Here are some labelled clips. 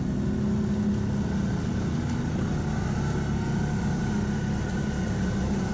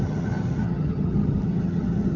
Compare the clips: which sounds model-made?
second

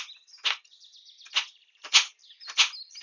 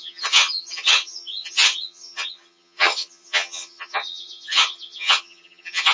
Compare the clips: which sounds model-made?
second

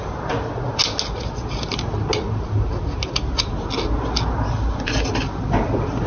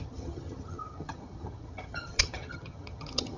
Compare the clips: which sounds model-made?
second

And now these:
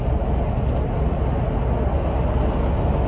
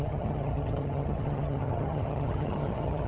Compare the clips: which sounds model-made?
second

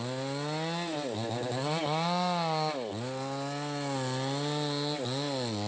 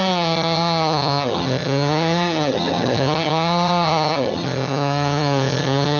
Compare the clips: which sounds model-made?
second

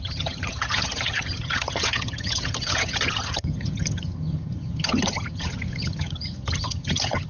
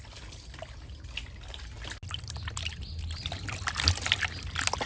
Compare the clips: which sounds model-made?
first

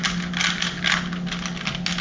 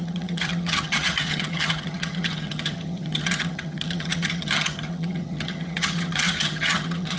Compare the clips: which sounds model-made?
second